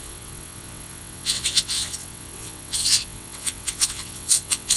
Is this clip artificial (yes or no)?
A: yes